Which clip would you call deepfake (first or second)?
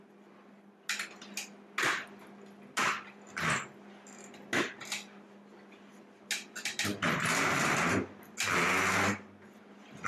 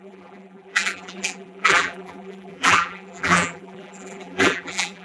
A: second